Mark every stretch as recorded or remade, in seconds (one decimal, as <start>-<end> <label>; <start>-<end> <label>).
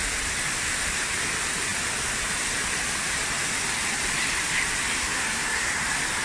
0.0-5.0 recorded; 5.0-5.7 remade; 5.7-6.2 recorded